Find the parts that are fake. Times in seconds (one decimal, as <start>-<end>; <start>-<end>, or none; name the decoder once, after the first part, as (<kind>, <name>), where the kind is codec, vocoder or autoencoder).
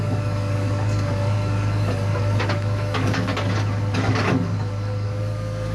0.0-3.3 (codec, DAC); 3.8-5.7